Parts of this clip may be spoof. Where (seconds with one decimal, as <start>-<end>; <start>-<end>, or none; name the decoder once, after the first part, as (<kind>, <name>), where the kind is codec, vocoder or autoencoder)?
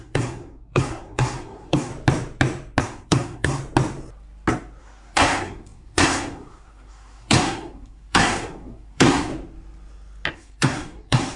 0.0-1.9 (codec, SNAC); 2.8-3.6; 4.8-9.3; 10.3-11.4